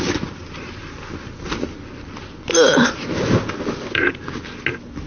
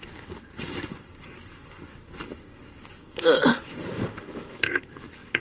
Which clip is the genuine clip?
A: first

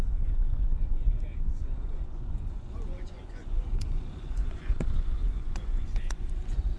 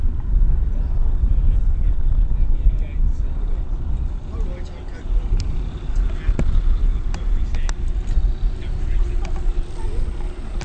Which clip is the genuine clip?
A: second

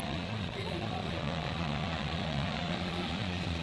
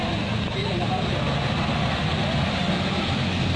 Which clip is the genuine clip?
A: second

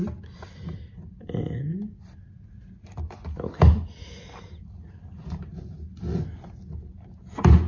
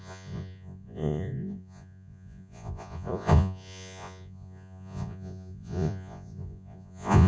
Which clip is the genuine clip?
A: first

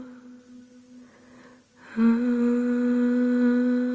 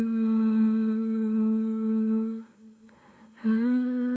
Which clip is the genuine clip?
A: first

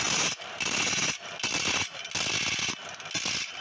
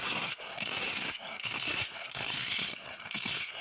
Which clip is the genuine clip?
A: first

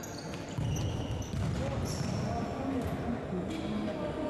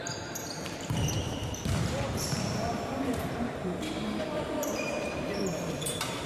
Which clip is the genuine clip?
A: first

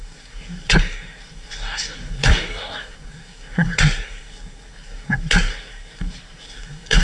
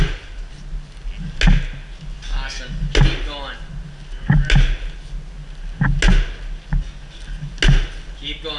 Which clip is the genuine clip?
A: second